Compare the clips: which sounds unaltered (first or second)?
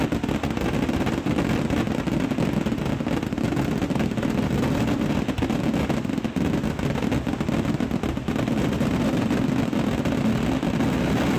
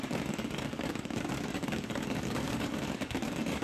first